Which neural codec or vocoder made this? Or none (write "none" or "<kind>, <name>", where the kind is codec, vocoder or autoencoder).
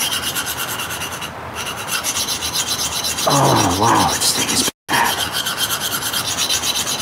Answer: none